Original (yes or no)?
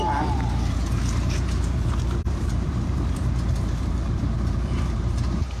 no